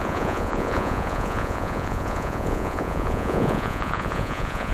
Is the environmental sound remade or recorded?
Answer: remade